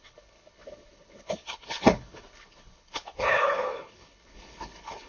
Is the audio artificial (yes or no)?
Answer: yes